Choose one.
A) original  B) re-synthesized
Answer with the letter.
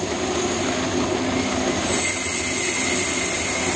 A